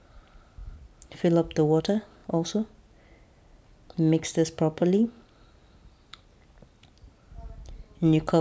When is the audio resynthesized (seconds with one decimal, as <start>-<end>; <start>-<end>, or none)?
none